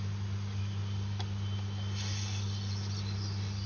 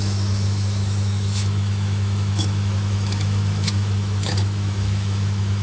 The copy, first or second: second